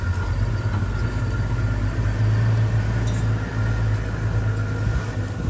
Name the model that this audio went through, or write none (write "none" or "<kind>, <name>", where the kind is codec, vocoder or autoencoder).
none